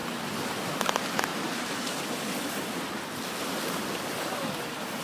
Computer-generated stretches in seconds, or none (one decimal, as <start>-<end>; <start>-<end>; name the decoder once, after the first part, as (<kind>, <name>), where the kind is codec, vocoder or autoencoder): none